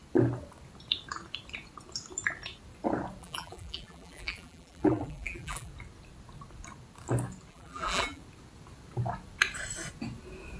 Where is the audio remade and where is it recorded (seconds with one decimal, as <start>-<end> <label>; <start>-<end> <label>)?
0.0-3.2 recorded; 3.2-5.7 remade; 5.7-7.5 recorded; 7.5-8.2 remade; 8.2-10.6 recorded